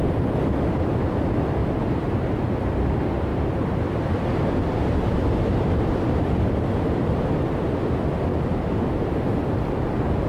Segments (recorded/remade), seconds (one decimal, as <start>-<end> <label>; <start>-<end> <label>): 0.0-1.6 recorded; 1.6-2.9 remade; 2.9-3.3 recorded; 3.3-6.6 remade; 6.6-10.3 recorded